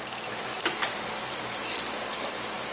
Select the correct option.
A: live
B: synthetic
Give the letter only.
B